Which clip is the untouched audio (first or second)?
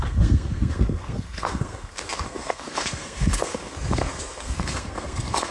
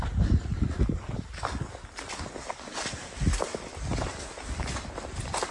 second